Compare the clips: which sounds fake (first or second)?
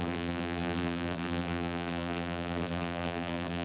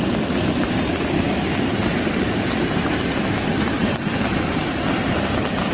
first